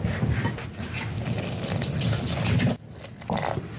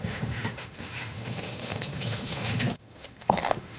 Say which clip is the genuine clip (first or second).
first